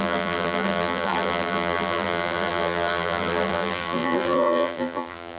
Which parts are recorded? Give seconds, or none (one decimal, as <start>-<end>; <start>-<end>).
none

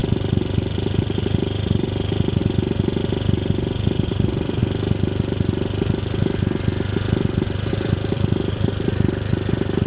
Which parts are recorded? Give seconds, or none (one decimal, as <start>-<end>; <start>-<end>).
0.0-1.0; 2.4-3.0; 4.6-7.7